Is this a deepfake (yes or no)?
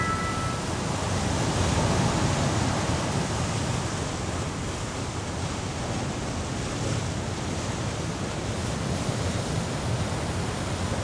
no